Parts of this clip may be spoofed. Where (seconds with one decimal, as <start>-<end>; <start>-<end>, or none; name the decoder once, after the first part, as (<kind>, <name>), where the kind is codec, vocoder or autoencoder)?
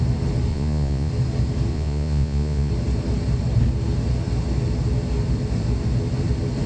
0.5-1.1 (vocoder, Vocos); 1.7-2.7